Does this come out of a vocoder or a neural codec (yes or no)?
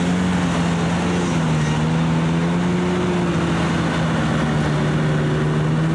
no